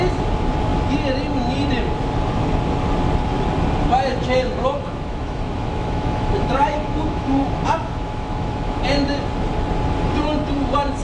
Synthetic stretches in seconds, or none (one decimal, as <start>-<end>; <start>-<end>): 4.1-8.8